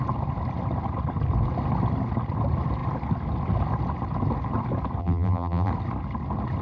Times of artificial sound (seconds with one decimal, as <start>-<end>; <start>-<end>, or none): 5.0-5.7